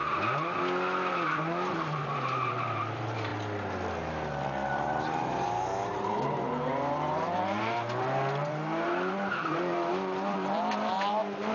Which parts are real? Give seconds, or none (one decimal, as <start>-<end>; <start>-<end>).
0.0-1.1; 3.3-5.2